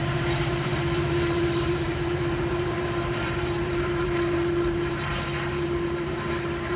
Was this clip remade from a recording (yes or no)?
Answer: yes